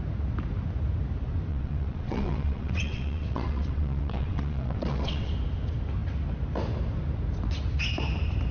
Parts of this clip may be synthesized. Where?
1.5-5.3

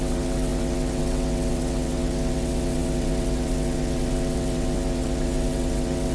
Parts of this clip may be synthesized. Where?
0.0-6.1

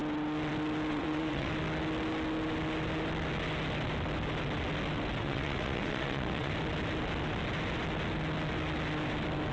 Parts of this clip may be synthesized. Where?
0.9-1.5; 5.2-6.5

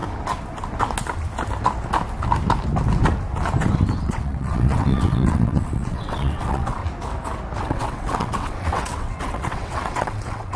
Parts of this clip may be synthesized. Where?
4.0-6.8; 7.6-10.6

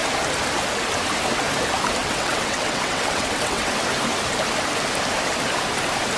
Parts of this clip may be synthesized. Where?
2.0-3.7